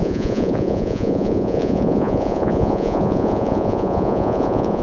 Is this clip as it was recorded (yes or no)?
no